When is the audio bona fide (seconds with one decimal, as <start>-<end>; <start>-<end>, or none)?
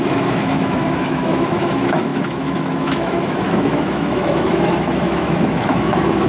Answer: none